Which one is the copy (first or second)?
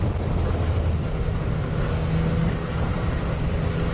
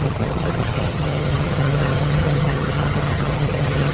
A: second